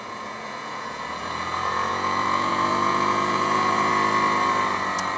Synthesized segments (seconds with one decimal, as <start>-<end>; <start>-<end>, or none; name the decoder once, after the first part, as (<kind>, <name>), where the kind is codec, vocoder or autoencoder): 0.0-3.9 (vocoder, Vocos)